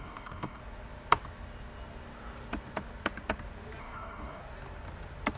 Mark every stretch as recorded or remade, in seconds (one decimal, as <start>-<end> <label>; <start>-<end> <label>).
0.0-0.6 remade; 0.6-3.8 recorded; 3.8-4.4 remade; 4.4-5.4 recorded